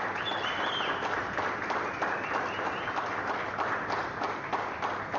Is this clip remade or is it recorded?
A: recorded